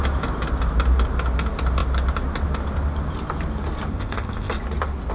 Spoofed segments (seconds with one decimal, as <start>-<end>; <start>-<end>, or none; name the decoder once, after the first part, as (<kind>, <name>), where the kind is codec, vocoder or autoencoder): 3.9-4.5 (codec, ZipCodec)